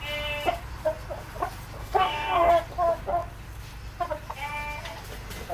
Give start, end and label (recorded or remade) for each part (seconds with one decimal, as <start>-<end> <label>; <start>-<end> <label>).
0.0-1.8 recorded; 1.8-2.5 remade; 2.5-5.5 recorded